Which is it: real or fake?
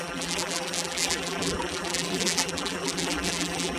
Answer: fake